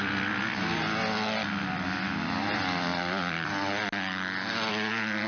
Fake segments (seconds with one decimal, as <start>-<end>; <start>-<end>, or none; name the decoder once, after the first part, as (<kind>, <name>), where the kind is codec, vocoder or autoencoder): none